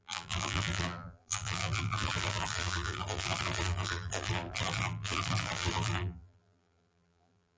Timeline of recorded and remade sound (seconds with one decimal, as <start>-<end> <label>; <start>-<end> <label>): 0.0-7.6 remade